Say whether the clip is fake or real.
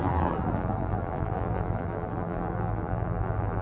fake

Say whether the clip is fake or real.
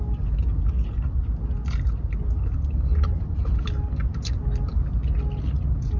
real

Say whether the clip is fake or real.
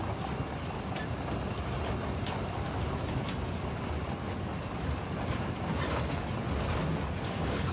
real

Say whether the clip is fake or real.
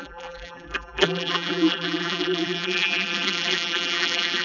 fake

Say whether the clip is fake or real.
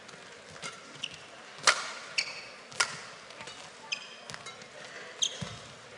real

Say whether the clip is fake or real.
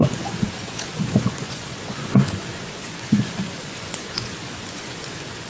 fake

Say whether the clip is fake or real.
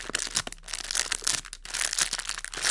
real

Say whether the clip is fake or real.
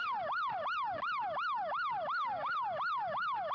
real